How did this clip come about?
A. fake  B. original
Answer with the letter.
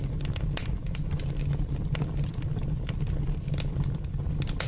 B